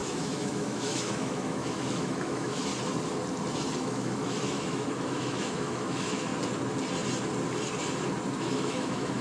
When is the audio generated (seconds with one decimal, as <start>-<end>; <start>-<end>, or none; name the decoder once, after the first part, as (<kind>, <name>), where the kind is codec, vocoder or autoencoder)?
0.0-2.7 (autoencoder, DAC-VAE); 3.8-6.3; 8.4-9.2